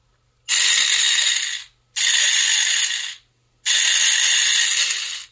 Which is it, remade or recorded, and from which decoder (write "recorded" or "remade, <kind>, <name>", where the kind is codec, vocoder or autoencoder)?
recorded